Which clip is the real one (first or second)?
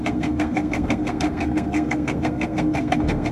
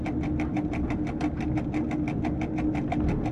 second